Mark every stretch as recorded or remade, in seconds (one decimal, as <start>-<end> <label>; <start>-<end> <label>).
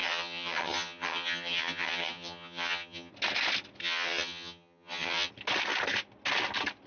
0.0-3.1 remade; 3.1-3.8 recorded; 3.8-5.3 remade; 5.3-6.9 recorded